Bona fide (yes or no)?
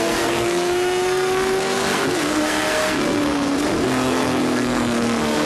no